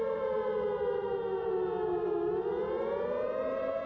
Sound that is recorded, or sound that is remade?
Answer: recorded